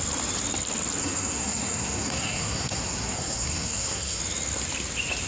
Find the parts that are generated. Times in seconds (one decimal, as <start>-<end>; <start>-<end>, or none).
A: 1.0-4.2